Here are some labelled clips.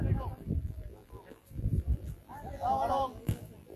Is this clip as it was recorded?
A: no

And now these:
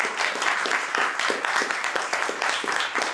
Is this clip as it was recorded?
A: yes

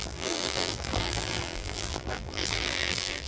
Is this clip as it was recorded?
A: no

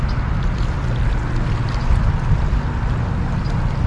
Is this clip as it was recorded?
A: yes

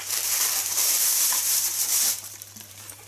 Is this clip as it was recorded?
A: no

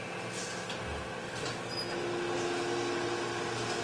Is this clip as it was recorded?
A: yes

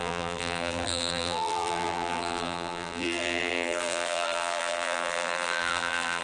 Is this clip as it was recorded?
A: no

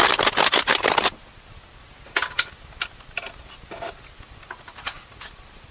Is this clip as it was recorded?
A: yes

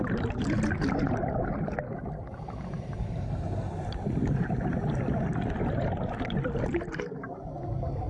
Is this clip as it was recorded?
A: yes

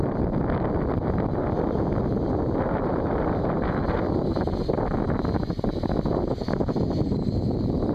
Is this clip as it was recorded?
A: no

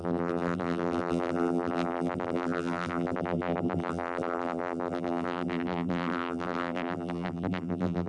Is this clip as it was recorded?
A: no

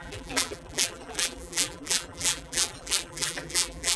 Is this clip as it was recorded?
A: no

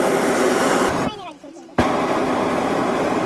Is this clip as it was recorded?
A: no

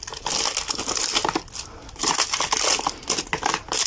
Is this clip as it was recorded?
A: yes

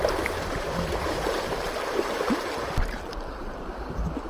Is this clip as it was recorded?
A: no